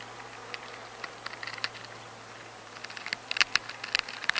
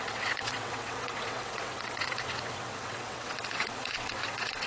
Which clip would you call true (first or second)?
first